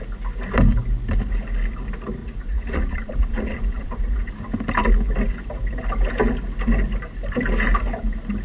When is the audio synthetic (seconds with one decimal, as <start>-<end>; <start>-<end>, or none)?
2.2-4.3